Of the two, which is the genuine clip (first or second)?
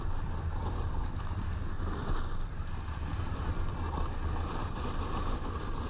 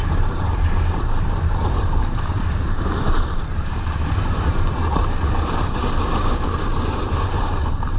first